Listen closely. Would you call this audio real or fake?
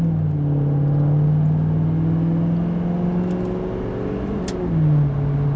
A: real